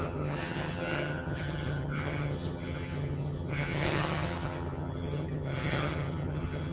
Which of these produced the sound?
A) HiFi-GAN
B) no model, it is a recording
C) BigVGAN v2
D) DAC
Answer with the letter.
A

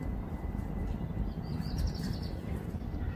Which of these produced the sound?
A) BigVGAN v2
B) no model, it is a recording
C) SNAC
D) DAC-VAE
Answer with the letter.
B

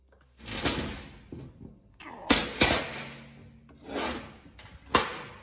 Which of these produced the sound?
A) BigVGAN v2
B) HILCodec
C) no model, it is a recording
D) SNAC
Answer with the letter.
C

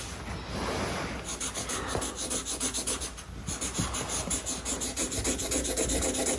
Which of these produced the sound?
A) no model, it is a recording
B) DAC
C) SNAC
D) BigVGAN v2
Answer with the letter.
A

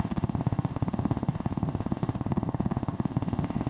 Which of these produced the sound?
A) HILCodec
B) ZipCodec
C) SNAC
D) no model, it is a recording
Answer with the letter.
B